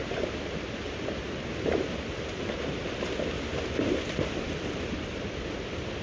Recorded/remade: recorded